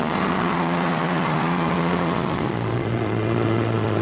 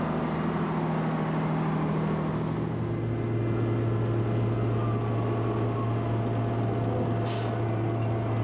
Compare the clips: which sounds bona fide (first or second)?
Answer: second